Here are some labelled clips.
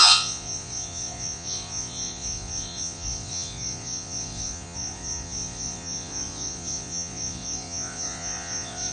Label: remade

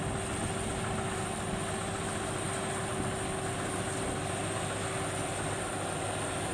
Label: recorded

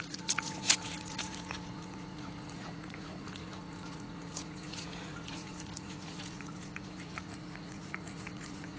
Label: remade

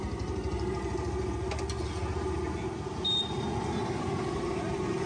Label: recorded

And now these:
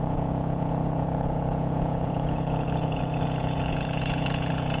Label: remade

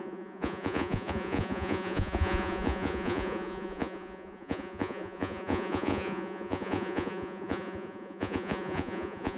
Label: remade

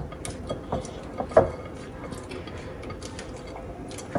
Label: recorded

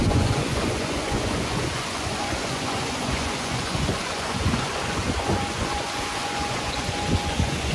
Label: remade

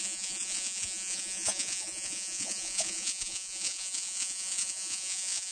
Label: remade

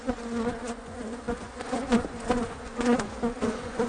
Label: remade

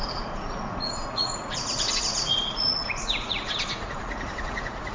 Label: remade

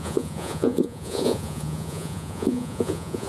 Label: remade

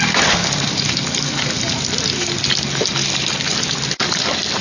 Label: recorded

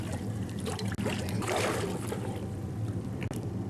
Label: recorded